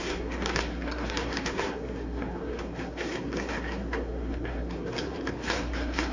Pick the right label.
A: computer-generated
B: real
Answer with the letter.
A